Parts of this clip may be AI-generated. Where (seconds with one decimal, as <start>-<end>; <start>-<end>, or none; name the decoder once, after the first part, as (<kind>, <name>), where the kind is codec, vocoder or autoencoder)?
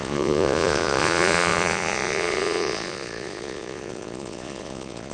0.0-5.1 (vocoder, Vocos)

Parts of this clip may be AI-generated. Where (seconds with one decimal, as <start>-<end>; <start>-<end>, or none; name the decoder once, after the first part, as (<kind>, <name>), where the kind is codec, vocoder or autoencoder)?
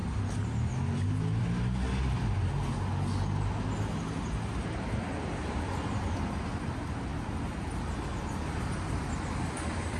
none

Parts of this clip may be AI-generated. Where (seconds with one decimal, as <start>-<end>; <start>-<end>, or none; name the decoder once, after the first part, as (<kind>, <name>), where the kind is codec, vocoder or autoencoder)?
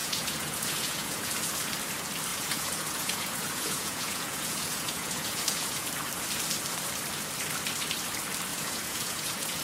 0.0-1.3 (vocoder, Vocos); 2.3-5.9; 8.5-9.6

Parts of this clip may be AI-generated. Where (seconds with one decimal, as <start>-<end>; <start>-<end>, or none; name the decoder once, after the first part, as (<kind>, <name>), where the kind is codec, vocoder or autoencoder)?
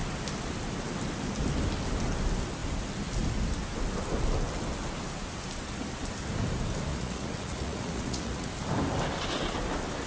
6.9-8.5 (vocoder, Vocos)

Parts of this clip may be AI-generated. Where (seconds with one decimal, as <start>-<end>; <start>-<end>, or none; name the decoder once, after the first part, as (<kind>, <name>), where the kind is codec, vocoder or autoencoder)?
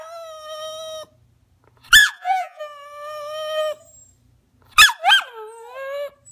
2.0-2.6 (vocoder, Vocos)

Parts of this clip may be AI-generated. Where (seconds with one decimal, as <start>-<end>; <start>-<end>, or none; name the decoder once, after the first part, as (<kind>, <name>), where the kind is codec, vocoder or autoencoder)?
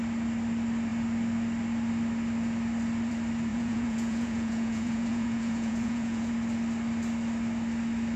3.5-6.3 (vocoder, Vocos)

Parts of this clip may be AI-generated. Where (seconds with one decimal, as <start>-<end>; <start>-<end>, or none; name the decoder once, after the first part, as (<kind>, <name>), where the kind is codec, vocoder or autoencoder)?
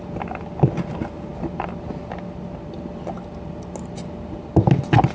none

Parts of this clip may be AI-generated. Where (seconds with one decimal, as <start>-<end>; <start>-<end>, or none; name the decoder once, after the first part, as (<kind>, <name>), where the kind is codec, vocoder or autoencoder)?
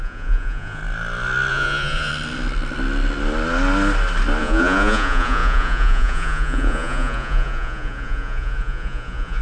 0.0-0.8 (vocoder, Vocos); 1.5-2.1; 4.4-9.4